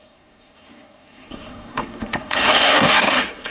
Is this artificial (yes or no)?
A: yes